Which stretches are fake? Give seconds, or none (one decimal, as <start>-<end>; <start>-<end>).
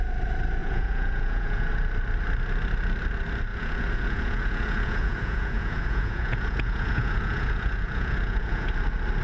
0.6-1.7; 3.5-8.7